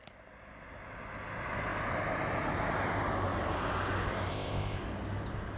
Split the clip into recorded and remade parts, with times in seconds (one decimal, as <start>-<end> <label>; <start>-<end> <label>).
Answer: 0.0-4.3 recorded; 4.3-4.8 remade; 4.8-5.6 recorded